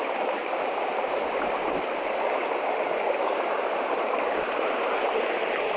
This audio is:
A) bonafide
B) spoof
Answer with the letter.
A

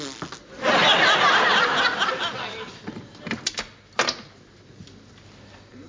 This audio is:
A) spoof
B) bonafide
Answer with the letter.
B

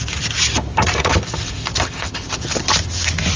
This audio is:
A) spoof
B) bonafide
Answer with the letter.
B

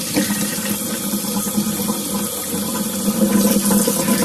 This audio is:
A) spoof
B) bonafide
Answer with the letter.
B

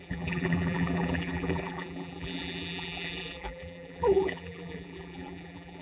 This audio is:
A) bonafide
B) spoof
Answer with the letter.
B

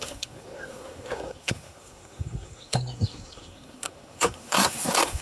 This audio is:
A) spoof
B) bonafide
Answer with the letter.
A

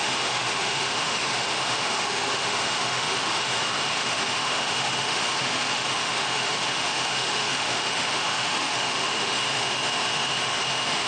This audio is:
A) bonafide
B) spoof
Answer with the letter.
B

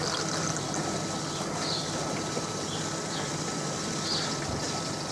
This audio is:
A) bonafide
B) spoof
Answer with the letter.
A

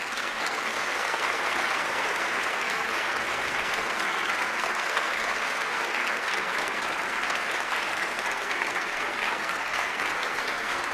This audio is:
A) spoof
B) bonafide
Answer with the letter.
A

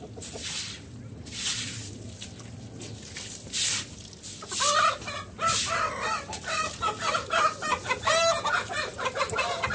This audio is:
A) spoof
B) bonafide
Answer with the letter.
B